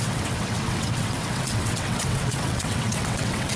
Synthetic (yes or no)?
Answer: yes